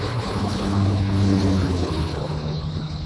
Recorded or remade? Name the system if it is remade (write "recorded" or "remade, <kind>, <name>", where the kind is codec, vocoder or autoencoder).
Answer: remade, codec, HILCodec